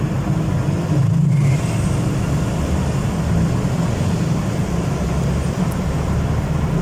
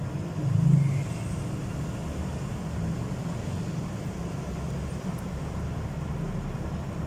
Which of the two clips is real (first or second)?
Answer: second